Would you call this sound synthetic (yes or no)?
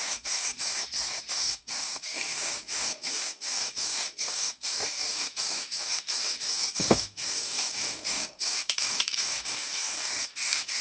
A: yes